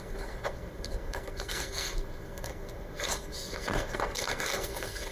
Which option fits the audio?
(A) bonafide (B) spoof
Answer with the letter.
B